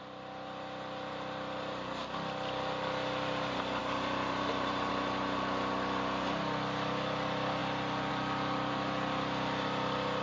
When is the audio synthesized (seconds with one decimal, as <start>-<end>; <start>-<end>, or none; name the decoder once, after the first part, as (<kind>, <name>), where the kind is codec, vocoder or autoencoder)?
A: 3.8-4.9 (vocoder, BigVGAN v2)